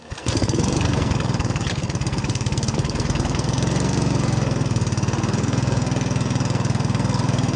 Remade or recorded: remade